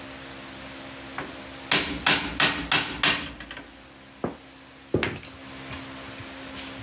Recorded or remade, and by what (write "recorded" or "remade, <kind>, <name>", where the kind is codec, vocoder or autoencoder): recorded